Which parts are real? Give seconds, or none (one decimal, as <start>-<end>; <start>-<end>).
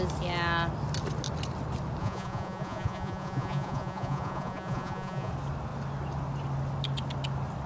0.0-2.0; 5.3-7.7